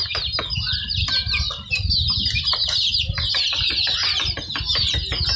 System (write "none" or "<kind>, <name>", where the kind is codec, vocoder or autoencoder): none